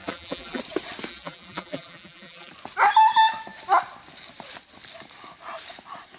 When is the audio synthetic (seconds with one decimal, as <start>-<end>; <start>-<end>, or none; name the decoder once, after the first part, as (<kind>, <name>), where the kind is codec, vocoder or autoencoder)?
0.0-0.6 (vocoder, BigVGAN v2); 1.1-2.5